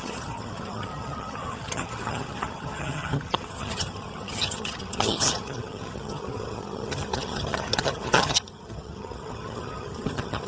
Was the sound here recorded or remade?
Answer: remade